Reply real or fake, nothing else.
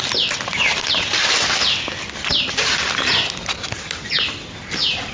real